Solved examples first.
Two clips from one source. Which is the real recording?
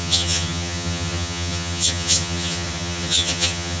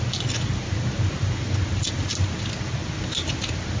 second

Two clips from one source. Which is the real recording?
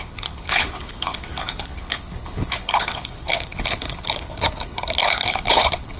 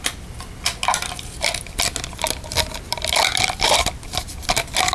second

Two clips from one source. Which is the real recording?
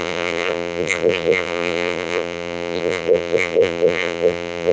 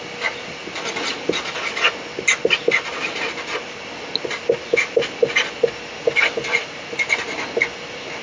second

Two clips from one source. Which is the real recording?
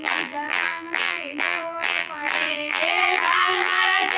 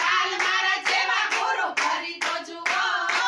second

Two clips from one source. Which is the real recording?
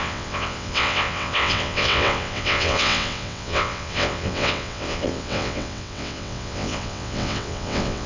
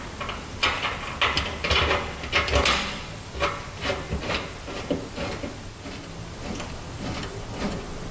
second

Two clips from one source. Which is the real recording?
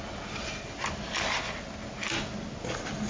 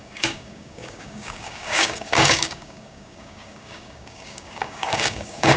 first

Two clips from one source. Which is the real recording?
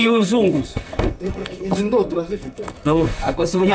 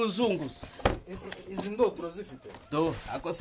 second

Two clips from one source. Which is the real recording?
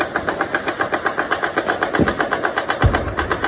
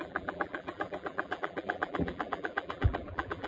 first